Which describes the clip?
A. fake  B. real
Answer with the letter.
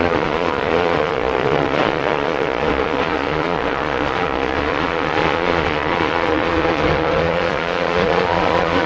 A